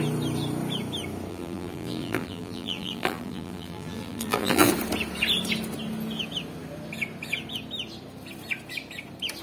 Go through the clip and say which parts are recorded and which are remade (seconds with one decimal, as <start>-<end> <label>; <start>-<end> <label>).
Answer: 0.0-1.3 recorded; 1.3-4.7 remade; 4.7-9.4 recorded